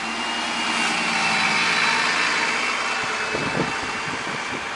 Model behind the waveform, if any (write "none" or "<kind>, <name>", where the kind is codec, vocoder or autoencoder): none